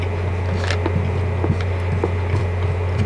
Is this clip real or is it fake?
real